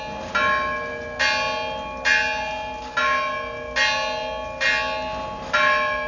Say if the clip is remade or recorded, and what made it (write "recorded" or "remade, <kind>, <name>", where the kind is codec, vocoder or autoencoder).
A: recorded